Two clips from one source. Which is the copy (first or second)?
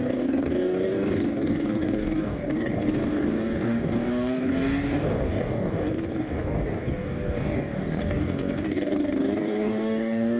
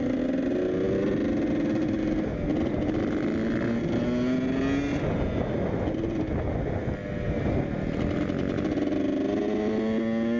first